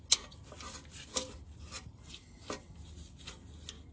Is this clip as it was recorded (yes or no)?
yes